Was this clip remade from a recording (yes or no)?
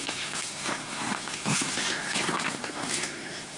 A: yes